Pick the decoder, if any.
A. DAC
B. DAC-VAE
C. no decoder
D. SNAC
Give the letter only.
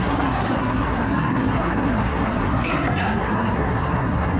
D